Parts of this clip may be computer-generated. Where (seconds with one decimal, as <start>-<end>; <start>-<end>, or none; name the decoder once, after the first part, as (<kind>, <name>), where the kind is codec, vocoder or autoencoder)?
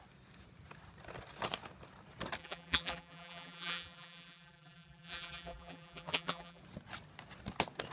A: 2.4-6.6 (vocoder, BigVGAN v2)